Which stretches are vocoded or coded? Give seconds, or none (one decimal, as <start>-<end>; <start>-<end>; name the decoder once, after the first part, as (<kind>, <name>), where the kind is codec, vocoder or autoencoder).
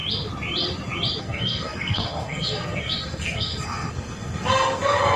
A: 1.2-5.2 (codec, SNAC)